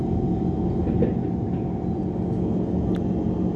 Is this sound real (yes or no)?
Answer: yes